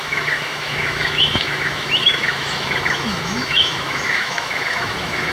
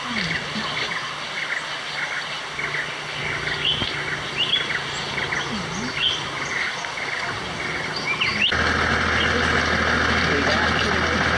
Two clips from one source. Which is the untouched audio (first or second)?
second